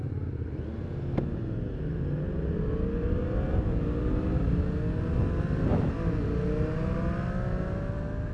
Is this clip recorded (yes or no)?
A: yes